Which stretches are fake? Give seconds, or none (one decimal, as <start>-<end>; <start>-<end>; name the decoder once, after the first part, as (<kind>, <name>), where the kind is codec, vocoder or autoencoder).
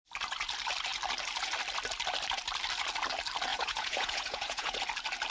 3.5-4.8 (vocoder, Vocos)